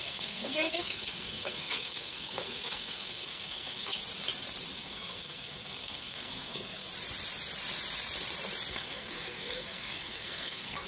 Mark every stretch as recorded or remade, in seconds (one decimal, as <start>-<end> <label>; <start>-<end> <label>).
0.0-4.0 remade; 4.0-4.8 recorded; 4.8-6.8 remade; 6.8-8.7 recorded; 8.7-10.9 remade